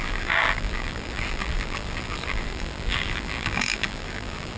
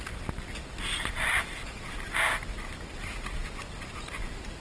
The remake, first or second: first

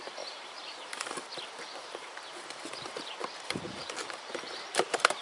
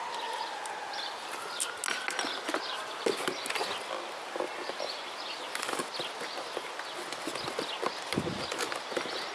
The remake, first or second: first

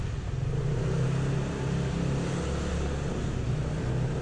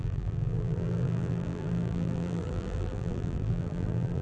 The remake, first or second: second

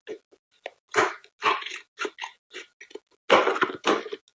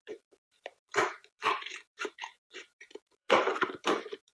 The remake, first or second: second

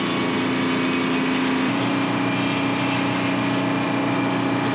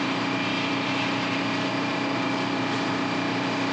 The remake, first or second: second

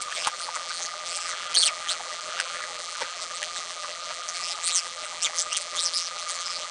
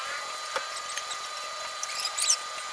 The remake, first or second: first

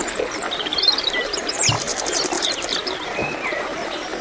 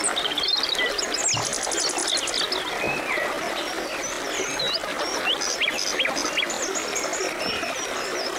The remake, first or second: first